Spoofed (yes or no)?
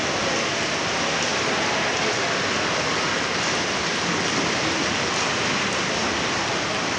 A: no